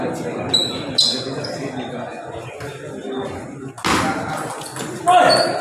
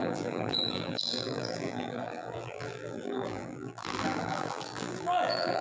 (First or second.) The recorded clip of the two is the first